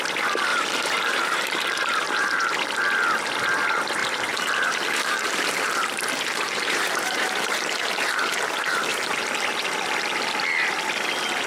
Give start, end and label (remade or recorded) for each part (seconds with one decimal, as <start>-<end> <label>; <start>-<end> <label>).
0.0-0.5 recorded; 0.5-2.5 remade; 2.5-4.0 recorded; 4.0-7.9 remade; 7.9-11.5 recorded